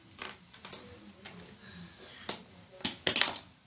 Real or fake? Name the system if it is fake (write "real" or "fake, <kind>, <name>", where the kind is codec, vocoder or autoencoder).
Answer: real